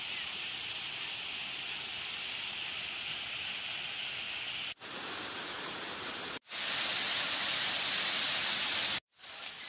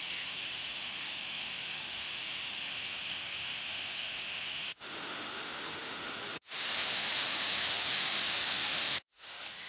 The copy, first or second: second